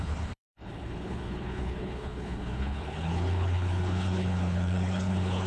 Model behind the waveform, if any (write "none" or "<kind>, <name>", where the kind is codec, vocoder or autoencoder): codec, HILCodec